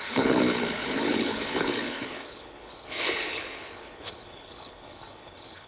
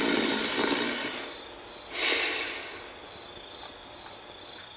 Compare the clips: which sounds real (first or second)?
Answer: second